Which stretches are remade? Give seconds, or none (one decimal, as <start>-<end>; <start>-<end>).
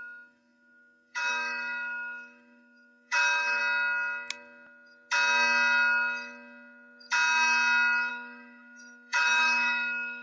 0.0-3.6; 8.1-10.2